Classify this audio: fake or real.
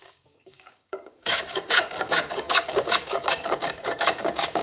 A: fake